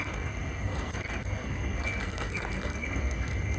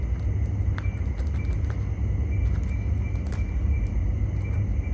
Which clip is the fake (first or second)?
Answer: first